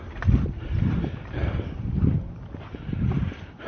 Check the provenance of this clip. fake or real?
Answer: fake